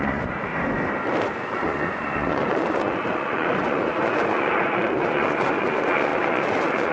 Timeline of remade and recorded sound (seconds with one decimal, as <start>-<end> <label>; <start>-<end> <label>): 0.0-0.5 remade; 0.5-1.2 recorded; 1.2-6.9 remade